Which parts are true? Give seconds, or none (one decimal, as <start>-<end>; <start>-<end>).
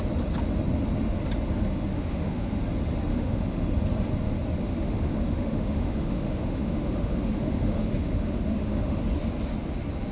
0.0-1.9; 2.6-3.1; 3.6-4.7; 9.0-10.1